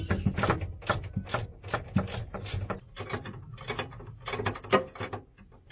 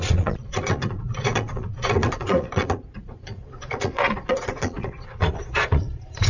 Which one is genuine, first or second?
first